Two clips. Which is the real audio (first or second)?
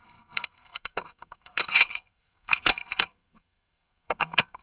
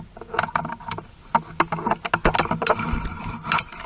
second